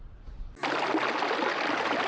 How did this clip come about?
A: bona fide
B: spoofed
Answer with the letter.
A